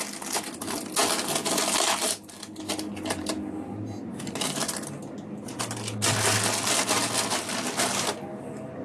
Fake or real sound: real